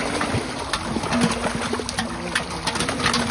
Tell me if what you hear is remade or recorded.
recorded